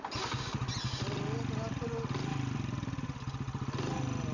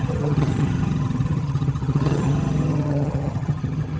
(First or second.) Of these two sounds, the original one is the first